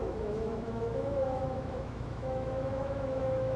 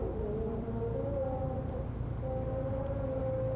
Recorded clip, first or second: second